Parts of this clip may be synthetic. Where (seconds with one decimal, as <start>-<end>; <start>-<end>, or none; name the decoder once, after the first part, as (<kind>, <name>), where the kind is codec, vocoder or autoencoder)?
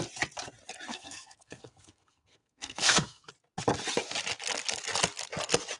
0.9-3.3 (codec, SNAC)